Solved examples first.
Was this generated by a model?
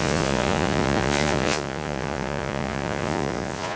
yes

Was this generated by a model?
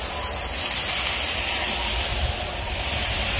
no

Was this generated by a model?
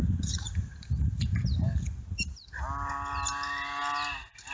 no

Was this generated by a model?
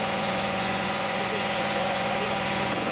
yes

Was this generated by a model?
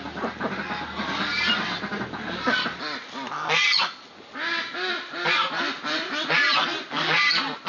no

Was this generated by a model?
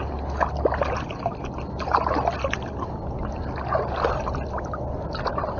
no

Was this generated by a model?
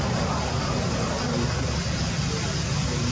no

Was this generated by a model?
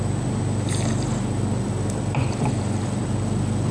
no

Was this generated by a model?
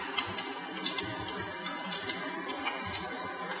yes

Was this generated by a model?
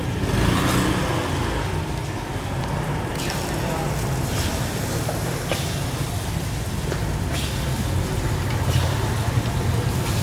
no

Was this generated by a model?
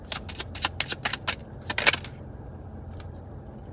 no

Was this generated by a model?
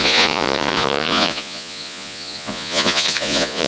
yes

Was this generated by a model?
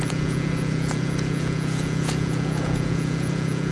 yes